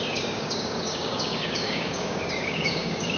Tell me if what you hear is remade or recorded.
remade